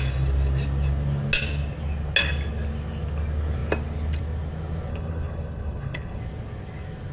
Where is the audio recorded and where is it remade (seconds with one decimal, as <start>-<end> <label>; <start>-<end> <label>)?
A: 0.0-4.9 recorded; 4.9-6.2 remade; 6.2-7.1 recorded